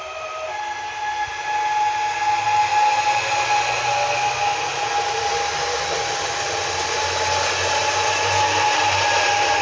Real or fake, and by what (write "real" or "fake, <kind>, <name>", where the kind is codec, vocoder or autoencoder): real